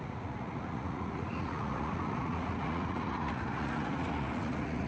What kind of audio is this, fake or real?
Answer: fake